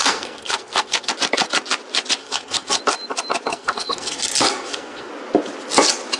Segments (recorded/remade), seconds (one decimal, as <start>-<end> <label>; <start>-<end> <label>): 0.0-1.1 remade; 1.1-2.2 recorded; 2.2-2.8 remade; 2.8-3.5 recorded; 3.5-5.1 remade; 5.1-6.2 recorded